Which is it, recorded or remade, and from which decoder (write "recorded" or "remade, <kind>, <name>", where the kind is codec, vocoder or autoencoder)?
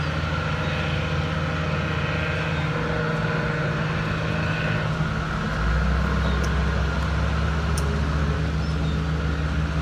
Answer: recorded